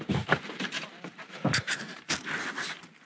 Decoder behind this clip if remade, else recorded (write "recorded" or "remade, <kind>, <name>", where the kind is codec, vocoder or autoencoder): recorded